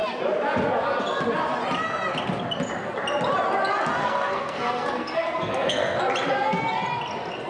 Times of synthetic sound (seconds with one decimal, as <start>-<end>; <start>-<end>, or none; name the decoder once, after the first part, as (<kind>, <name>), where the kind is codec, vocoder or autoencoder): 4.0-6.0 (codec, SNAC)